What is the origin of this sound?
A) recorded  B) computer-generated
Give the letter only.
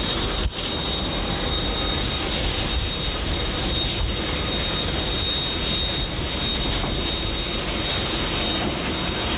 A